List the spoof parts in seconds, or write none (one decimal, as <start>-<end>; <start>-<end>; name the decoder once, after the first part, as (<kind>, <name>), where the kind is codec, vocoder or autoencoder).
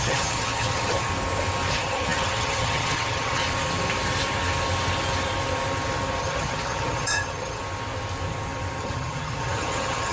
0.0-1.1 (vocoder, HiFi-GAN); 1.7-3.4; 6.2-7.6; 8.8-10.1